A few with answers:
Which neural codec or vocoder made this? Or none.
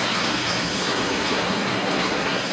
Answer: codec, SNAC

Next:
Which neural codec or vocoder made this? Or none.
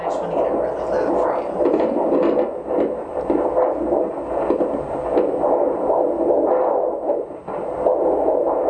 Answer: none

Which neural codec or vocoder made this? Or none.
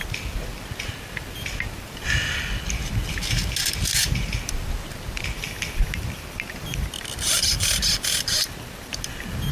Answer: none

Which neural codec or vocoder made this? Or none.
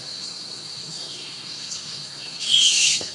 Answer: codec, SNAC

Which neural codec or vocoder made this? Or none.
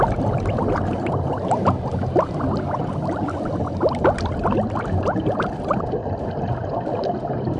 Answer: none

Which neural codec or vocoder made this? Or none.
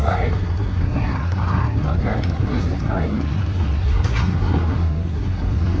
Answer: codec, SNAC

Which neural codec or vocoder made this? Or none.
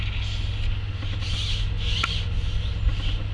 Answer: none